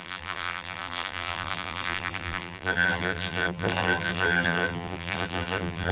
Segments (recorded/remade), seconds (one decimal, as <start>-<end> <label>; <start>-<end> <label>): 0.0-5.9 remade

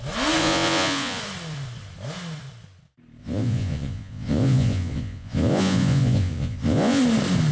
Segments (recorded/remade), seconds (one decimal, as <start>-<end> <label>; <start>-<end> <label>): 0.0-0.4 recorded; 0.4-1.2 remade; 1.2-3.2 recorded; 3.2-7.0 remade; 7.0-7.5 recorded

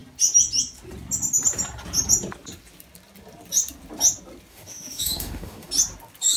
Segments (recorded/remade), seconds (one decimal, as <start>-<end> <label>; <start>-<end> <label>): 0.0-4.5 recorded; 4.5-5.7 remade; 5.7-6.4 recorded